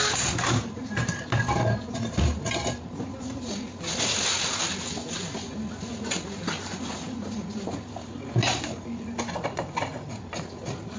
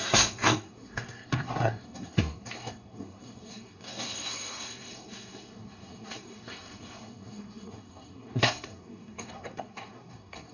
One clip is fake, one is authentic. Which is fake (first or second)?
second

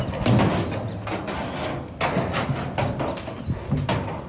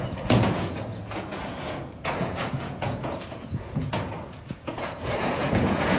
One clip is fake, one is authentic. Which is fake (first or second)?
second